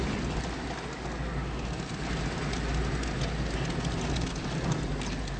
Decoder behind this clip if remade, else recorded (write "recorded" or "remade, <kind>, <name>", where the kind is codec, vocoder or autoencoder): recorded